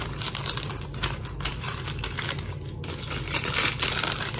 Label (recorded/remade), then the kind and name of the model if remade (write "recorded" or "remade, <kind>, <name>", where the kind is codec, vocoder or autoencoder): recorded